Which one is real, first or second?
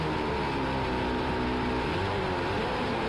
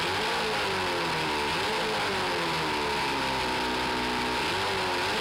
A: second